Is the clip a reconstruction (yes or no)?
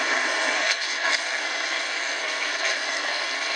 yes